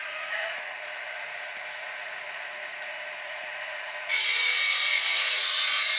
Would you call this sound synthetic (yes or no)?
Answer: yes